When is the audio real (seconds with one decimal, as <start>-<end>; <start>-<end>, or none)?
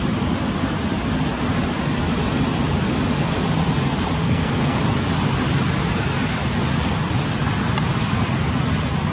0.0-4.2; 4.8-9.1